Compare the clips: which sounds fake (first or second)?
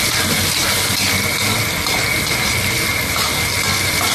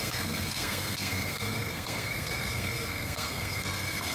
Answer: second